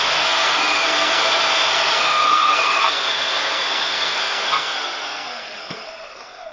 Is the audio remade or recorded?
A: remade